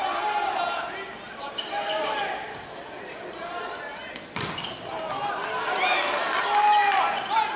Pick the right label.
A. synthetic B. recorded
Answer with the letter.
B